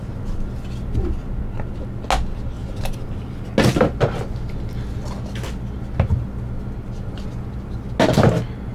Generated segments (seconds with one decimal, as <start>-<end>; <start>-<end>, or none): none